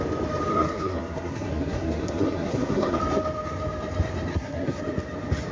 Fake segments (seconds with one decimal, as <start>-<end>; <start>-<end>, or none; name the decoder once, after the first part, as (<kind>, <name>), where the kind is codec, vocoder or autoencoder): 0.5-3.0 (codec, SNAC); 4.3-4.8